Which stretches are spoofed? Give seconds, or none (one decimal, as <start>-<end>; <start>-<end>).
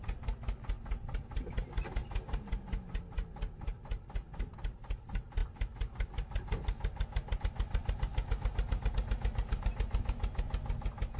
none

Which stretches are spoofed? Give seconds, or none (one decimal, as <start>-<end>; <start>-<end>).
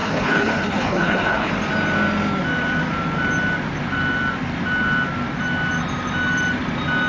0.0-1.5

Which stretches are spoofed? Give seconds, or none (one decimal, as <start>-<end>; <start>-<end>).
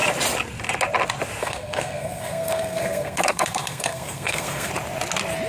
1.4-4.7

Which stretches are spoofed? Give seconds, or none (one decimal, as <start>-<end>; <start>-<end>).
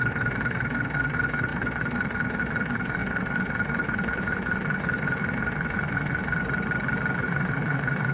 0.0-6.4; 7.2-8.1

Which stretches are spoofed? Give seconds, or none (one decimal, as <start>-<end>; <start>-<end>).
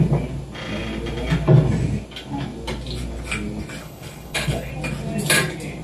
3.8-4.7